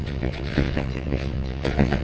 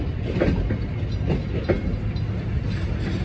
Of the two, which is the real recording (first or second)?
second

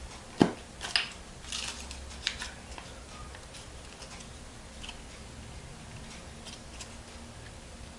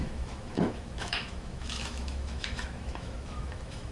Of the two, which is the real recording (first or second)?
first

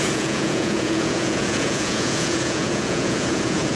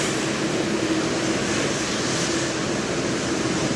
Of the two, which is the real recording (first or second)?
second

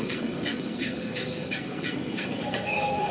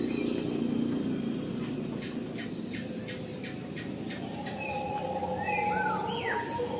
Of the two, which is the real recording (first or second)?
second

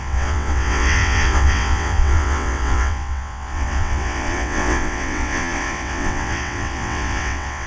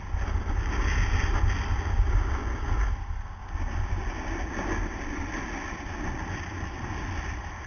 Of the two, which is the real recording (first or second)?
second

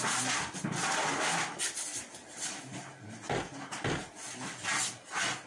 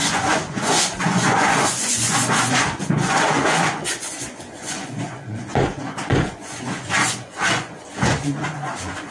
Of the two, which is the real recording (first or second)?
first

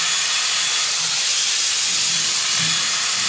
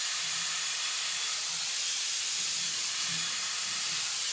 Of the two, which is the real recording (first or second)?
first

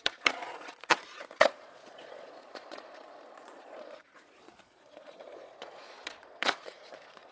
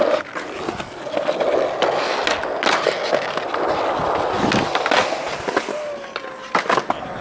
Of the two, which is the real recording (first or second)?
second